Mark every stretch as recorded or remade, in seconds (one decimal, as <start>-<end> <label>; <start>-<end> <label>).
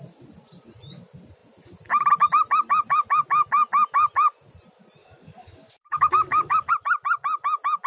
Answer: 0.0-5.0 recorded; 5.0-6.7 remade; 6.7-7.9 recorded